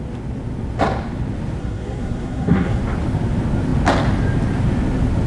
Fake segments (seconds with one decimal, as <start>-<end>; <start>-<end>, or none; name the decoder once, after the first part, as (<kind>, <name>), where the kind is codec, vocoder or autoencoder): 1.6-2.8 (codec, SNAC)